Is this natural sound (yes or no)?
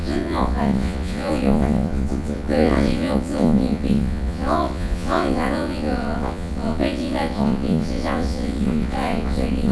no